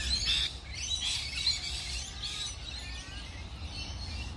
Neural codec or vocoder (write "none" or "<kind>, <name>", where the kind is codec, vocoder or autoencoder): none